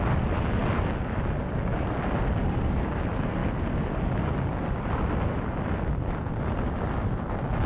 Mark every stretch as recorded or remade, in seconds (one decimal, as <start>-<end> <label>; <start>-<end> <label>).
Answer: 0.0-7.7 recorded